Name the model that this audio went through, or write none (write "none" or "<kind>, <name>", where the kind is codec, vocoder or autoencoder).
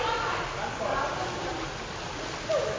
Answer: none